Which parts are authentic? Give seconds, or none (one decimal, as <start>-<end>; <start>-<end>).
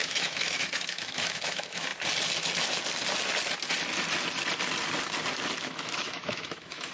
1.9-5.6